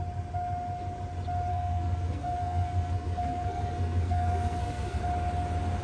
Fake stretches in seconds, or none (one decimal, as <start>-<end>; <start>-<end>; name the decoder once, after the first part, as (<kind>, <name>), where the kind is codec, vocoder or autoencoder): 1.5-5.0 (codec, SNAC)